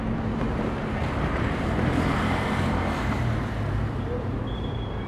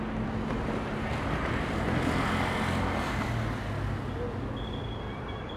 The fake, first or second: first